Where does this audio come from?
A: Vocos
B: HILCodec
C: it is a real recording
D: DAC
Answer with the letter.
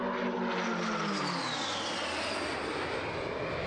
C